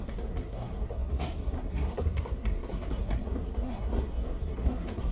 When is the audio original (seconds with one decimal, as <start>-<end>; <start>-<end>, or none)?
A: none